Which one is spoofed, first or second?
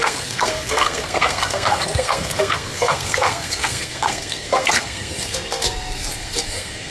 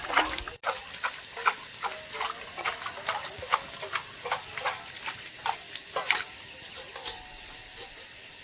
first